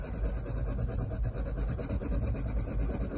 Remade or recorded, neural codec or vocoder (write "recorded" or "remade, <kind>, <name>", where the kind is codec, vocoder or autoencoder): recorded